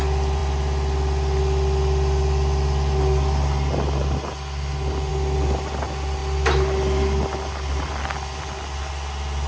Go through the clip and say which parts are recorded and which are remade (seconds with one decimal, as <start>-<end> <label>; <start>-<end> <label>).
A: 0.0-9.5 recorded